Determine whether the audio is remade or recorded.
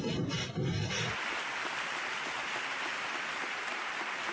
recorded